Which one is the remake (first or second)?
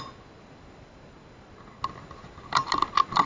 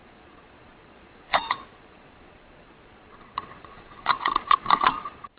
second